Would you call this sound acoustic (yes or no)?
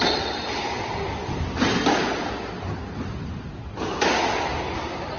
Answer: yes